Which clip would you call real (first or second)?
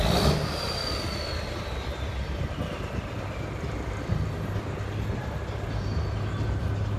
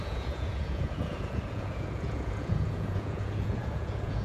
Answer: first